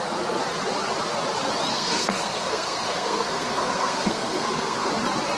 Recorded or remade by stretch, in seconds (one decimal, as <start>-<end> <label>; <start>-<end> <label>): 0.0-1.7 recorded; 1.7-4.9 remade; 4.9-5.4 recorded

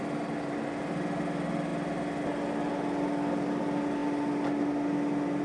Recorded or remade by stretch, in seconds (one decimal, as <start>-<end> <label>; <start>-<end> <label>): 0.0-5.4 recorded